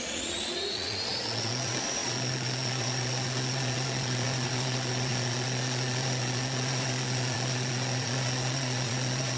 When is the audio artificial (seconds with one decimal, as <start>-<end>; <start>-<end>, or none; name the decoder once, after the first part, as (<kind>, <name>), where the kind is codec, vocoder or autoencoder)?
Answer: 0.0-9.4 (vocoder, Vocos)